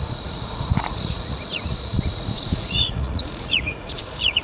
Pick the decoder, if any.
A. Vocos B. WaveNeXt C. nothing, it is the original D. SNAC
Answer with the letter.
A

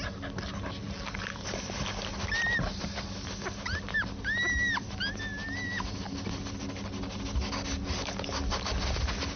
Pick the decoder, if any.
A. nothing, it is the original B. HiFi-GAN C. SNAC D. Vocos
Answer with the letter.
A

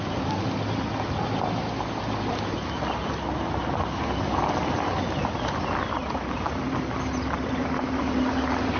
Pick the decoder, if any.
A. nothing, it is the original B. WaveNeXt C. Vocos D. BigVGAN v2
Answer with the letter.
A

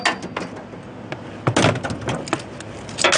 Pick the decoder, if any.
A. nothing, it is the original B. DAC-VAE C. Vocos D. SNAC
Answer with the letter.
A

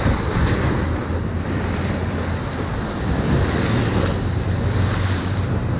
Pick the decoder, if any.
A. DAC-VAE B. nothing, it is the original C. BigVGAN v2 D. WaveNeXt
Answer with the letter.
B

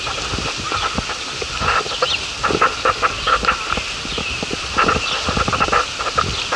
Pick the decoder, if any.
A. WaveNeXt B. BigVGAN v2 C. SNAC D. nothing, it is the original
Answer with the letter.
D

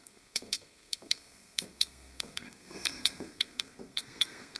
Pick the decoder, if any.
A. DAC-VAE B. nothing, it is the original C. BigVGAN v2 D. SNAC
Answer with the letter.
D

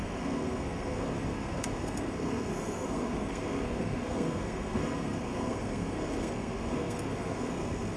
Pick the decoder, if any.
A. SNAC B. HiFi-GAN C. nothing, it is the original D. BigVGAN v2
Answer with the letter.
A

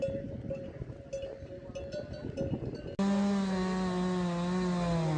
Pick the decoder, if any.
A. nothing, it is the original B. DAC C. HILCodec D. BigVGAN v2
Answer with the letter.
A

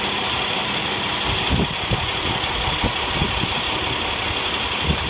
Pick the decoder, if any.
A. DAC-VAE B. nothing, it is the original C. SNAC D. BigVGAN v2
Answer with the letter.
D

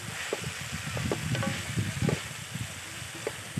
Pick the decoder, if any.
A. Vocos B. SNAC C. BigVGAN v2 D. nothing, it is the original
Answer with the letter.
D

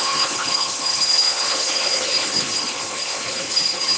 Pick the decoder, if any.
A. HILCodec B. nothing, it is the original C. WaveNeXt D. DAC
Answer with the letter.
A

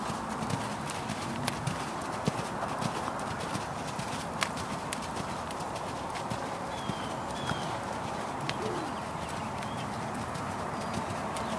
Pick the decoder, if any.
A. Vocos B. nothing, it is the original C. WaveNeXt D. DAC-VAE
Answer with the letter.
B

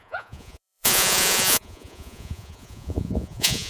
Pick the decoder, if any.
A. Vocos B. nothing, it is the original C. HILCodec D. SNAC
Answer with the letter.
A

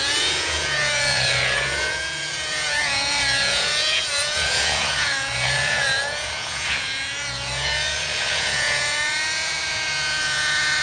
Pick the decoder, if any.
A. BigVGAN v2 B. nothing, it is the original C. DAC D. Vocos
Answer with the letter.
D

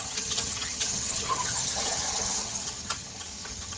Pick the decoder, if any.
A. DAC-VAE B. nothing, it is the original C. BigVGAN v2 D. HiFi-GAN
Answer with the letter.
D